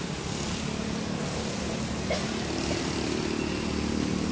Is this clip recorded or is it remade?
recorded